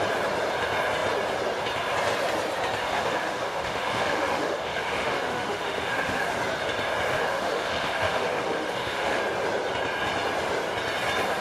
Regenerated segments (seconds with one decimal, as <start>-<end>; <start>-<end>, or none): 2.8-6.3; 7.1-9.2